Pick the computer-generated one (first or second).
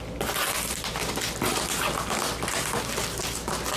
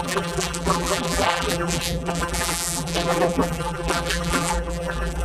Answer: second